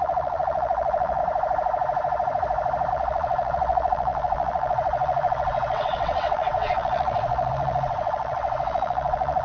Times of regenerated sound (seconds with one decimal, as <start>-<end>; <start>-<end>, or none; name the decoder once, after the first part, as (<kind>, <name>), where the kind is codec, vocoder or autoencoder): 0.0-1.2 (vocoder, WaveNeXt); 2.9-9.4